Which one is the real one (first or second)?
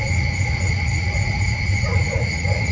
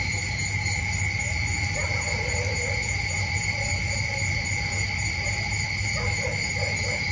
second